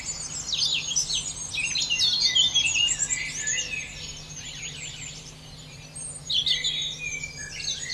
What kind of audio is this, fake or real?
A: real